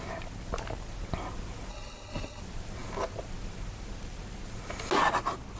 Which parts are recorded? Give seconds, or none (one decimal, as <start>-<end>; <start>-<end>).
0.0-1.7; 2.4-5.6